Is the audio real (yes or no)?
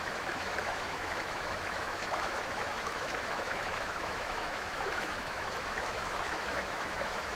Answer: no